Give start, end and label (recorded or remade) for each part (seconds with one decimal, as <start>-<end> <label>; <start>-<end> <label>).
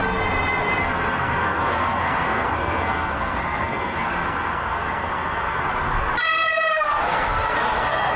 0.0-0.8 recorded; 0.8-5.7 remade; 5.7-6.2 recorded; 6.2-8.2 remade